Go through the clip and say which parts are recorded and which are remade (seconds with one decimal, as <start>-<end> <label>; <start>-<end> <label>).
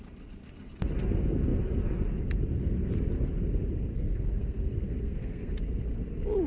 0.0-3.9 recorded; 3.9-5.5 remade; 5.5-6.5 recorded